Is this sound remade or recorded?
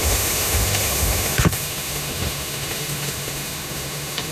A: remade